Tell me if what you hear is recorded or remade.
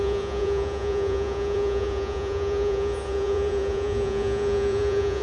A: remade